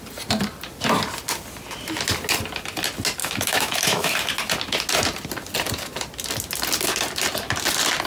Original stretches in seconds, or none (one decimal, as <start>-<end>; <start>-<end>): 0.0-3.2; 4.3-8.1